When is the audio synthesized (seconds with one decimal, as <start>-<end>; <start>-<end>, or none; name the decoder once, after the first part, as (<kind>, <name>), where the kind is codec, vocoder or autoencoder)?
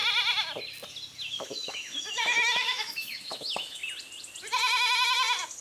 1.3-3.8 (autoencoder, DAC-VAE)